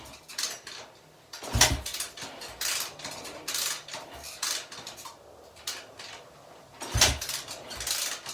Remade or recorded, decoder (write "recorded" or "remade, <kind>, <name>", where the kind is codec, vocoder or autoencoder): recorded